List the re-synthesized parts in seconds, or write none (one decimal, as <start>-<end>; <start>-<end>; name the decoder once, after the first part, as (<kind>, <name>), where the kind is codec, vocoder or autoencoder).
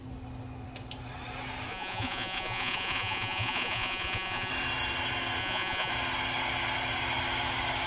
1.7-4.5 (vocoder, Vocos); 5.4-5.9